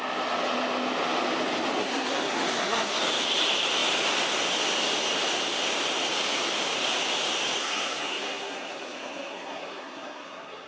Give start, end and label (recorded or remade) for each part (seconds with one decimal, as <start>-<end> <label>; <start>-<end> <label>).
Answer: 0.0-1.8 recorded; 1.8-3.0 remade; 3.0-7.6 recorded; 7.6-10.7 remade